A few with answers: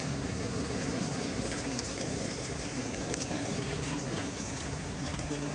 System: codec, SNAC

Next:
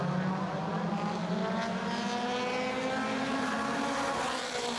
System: none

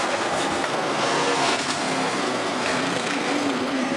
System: codec, SNAC